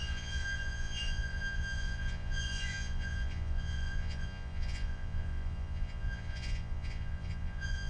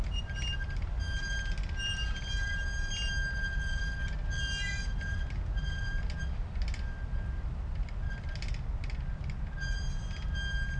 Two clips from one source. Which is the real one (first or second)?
second